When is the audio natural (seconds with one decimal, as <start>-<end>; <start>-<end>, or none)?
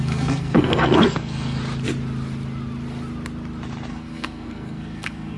1.6-3.9